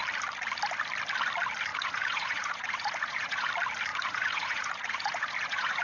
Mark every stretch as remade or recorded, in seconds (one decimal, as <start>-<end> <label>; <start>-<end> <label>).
0.0-1.7 recorded; 1.7-3.5 remade; 3.5-3.9 recorded; 3.9-5.8 remade